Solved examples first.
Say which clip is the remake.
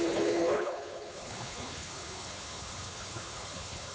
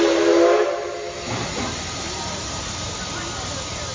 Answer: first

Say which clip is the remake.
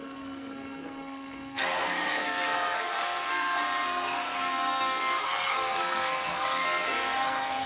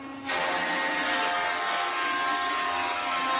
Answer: first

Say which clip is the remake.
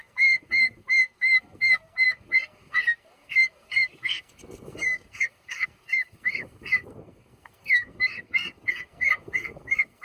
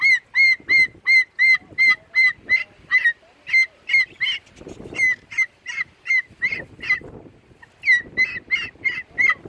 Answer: first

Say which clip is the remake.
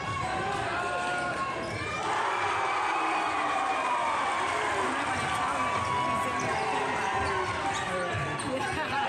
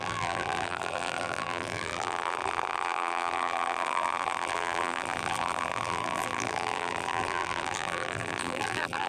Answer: second